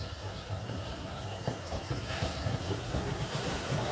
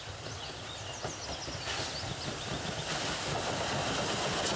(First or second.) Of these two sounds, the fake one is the first